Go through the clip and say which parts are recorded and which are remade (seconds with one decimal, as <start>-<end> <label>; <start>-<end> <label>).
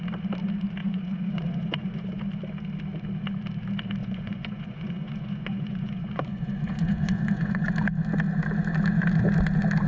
0.0-0.8 recorded; 0.8-2.2 remade; 2.2-4.0 recorded; 4.0-7.7 remade; 7.7-9.9 recorded